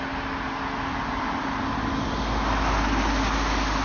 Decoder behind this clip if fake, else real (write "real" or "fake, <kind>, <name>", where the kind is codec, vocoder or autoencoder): real